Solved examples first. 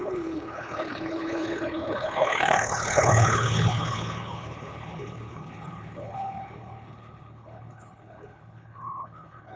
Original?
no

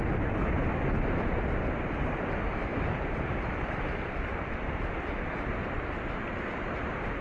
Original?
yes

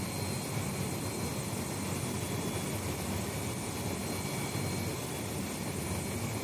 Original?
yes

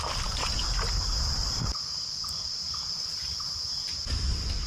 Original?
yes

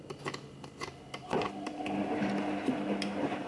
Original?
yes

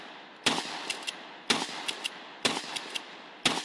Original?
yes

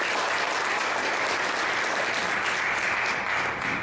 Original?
yes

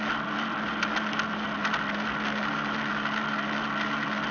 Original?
yes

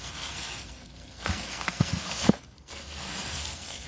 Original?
no